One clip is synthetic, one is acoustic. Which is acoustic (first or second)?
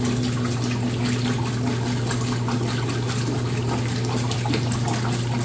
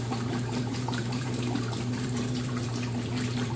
first